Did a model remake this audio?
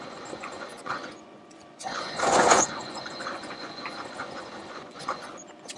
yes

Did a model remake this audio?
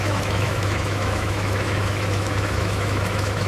yes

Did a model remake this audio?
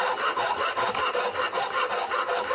no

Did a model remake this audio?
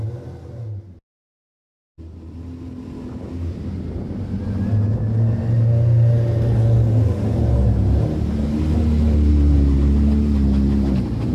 no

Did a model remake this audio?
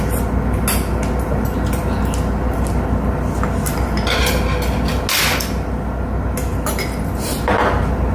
no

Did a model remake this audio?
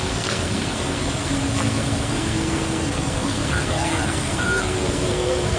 yes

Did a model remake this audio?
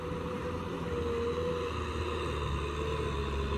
no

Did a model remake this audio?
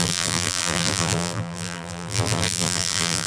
yes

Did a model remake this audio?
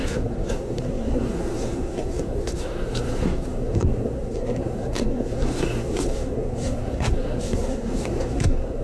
yes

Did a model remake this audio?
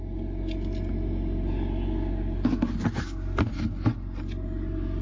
no